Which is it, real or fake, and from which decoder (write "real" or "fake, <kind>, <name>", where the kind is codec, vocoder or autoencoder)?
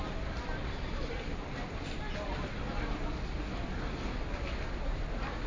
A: real